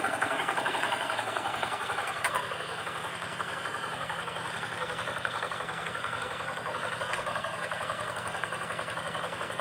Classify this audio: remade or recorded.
remade